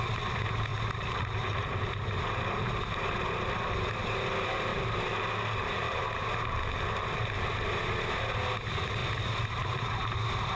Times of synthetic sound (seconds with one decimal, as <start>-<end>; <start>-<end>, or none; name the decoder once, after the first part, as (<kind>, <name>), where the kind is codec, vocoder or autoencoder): 0.7-2.7 (vocoder, BigVGAN v2); 4.7-6.0; 9.0-9.9